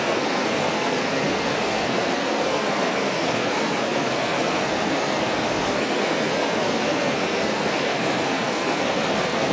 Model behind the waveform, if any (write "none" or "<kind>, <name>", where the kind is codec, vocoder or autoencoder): codec, SNAC